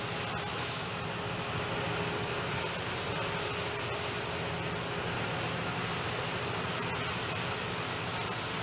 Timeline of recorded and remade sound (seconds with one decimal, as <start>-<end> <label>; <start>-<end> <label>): 0.0-0.5 recorded; 0.5-1.0 remade; 1.0-8.6 recorded